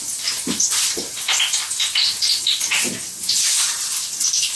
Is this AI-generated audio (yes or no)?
no